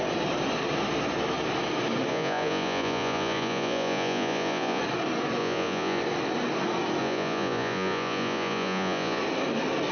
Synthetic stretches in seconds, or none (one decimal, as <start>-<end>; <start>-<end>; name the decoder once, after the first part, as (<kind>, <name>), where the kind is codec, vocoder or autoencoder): 2.1-4.8 (vocoder, Vocos); 5.4-6.0; 7.0-9.2